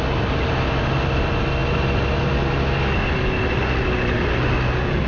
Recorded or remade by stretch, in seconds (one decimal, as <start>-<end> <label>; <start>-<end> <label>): 0.0-5.1 recorded